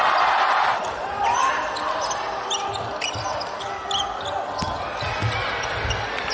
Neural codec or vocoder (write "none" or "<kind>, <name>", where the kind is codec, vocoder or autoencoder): none